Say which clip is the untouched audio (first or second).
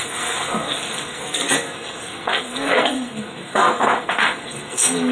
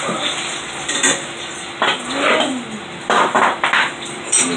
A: second